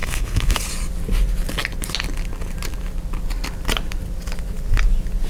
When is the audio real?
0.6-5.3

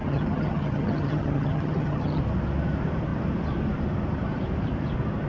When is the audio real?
2.2-5.3